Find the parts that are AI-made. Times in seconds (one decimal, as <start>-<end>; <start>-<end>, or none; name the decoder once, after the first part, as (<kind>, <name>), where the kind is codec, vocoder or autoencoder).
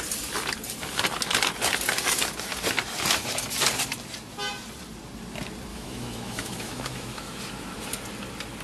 5.7-7.4 (autoencoder, DAC-VAE)